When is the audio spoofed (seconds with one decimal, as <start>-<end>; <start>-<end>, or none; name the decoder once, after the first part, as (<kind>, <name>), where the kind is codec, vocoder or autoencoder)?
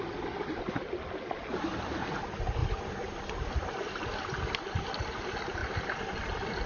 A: none